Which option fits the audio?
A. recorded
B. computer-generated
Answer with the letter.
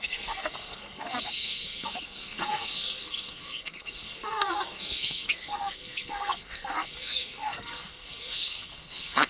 B